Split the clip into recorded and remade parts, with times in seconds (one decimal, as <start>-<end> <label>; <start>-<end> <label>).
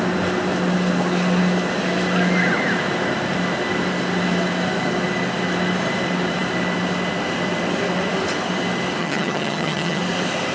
0.0-9.0 recorded; 9.0-10.0 remade; 10.0-10.5 recorded